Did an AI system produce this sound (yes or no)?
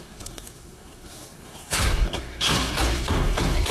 yes